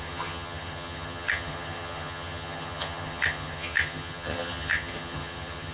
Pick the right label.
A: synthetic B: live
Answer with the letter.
A